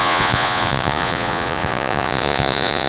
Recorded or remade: remade